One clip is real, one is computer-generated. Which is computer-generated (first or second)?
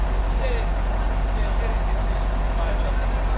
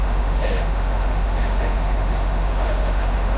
second